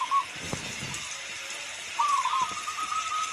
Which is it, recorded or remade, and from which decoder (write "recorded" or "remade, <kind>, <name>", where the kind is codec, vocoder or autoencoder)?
recorded